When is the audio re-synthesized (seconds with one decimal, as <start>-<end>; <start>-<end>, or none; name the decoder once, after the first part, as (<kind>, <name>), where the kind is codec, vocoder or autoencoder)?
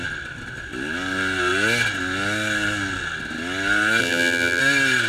4.0-4.6 (vocoder, BigVGAN v2)